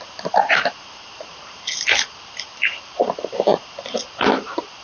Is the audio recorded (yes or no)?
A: no